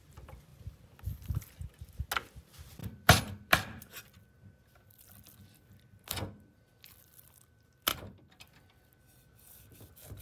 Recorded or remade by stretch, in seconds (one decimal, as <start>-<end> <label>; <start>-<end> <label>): 0.0-2.8 recorded; 2.8-3.8 remade; 3.8-7.9 recorded; 7.9-8.4 remade; 8.4-10.2 recorded